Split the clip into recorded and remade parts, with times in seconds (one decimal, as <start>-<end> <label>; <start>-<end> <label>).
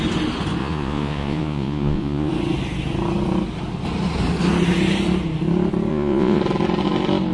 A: 0.0-0.6 recorded; 0.6-2.3 remade; 2.3-5.9 recorded; 5.9-6.4 remade; 6.4-7.3 recorded